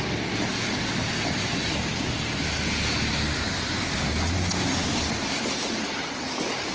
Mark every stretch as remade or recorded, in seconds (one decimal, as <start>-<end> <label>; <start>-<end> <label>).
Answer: 0.0-6.7 recorded